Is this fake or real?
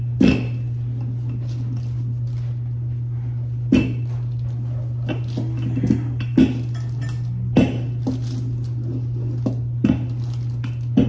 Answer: real